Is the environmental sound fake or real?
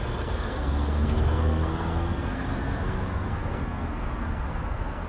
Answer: fake